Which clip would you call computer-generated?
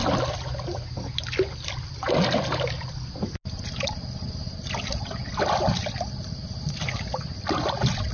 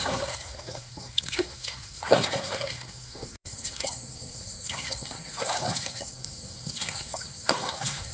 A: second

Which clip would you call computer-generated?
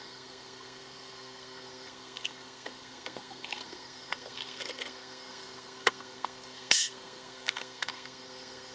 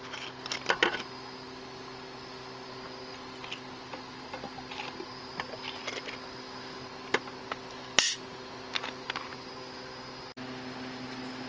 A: first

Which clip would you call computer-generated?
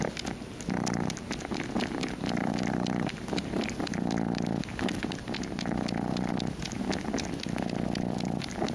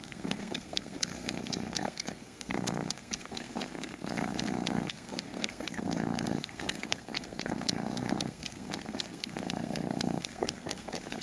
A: second